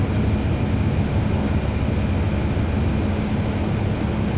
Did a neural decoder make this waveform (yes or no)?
no